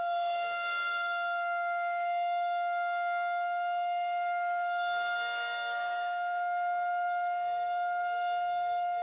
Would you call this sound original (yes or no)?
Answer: no